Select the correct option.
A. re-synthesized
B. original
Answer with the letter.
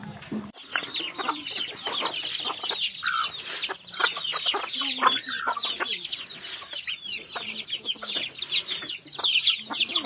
B